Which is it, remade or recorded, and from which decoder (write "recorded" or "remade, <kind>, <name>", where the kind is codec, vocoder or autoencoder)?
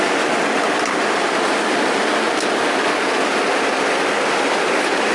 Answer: recorded